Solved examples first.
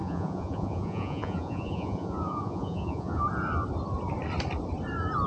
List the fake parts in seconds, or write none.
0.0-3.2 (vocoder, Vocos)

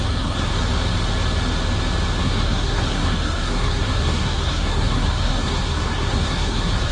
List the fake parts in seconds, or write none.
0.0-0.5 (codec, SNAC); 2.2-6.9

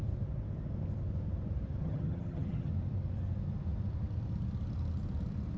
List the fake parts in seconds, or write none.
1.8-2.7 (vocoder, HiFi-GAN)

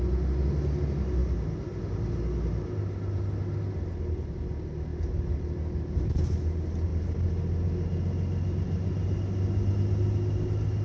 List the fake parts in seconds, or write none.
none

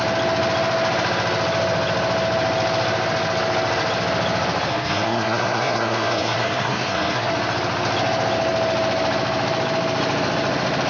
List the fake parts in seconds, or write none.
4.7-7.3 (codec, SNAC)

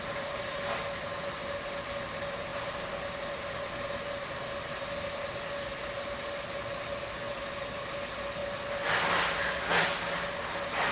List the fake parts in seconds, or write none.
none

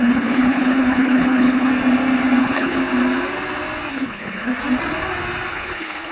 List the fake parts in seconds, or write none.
0.0-1.7 (codec, HILCodec); 2.4-2.8; 3.9-4.5; 5.5-6.1